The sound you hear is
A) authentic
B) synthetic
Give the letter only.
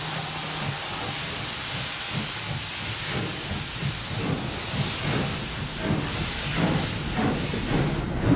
A